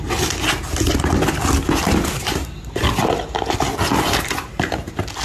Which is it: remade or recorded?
recorded